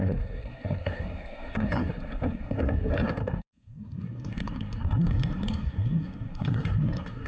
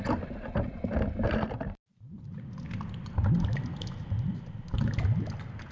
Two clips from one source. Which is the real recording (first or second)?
second